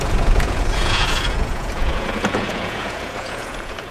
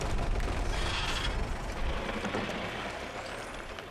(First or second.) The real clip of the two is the second